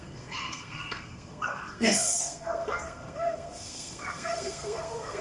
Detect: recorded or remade remade